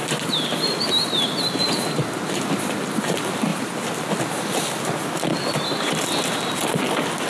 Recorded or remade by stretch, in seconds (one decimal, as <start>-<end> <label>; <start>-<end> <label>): 0.0-0.9 remade; 0.9-7.3 recorded